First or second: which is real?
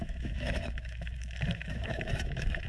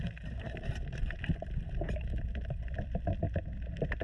second